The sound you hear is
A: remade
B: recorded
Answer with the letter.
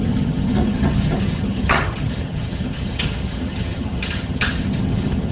A